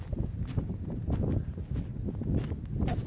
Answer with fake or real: real